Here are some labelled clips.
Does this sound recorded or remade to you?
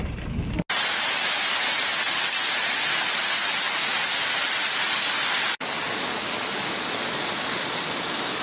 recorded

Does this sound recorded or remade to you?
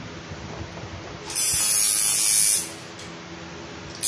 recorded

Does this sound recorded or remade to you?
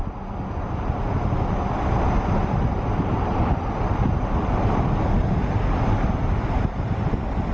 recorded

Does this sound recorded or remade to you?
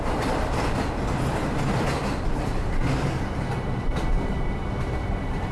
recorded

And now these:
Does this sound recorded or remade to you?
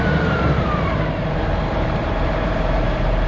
remade